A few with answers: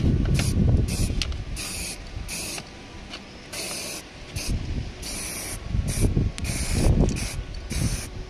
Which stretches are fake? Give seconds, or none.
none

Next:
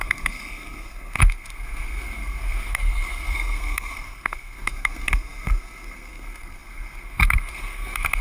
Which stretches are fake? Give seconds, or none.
0.0-8.2 (codec, SNAC)

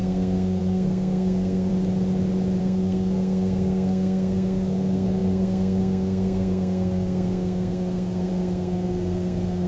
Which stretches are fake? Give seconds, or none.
0.0-1.7 (codec, SNAC); 2.6-9.7

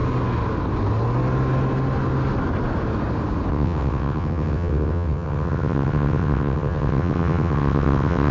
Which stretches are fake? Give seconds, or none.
3.5-8.3 (vocoder, WaveNeXt)

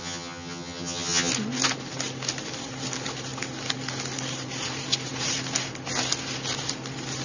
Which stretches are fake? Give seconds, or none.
0.0-1.3 (vocoder, HiFi-GAN)

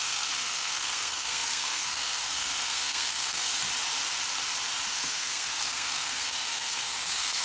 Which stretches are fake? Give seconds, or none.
0.0-3.5 (codec, SNAC); 4.9-7.4

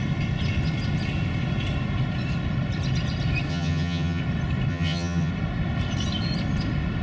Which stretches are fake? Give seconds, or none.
3.5-4.2 (vocoder, HiFi-GAN); 4.7-5.3

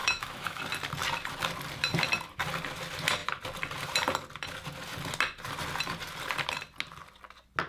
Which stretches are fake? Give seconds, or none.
0.0-0.6 (autoencoder, DAC-VAE)